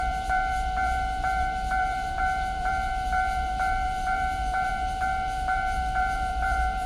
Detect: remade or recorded remade